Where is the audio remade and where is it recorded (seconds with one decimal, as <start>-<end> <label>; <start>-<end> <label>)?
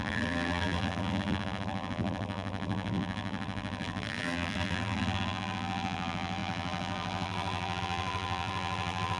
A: 0.0-9.2 remade